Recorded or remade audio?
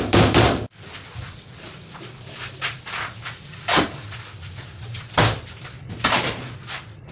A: recorded